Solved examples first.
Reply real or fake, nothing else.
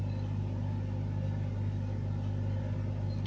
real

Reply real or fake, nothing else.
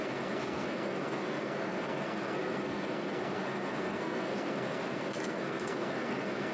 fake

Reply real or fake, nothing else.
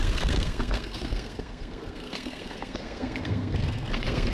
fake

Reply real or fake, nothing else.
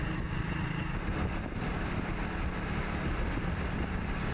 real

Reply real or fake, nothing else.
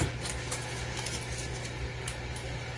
real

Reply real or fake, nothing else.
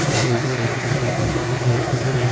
fake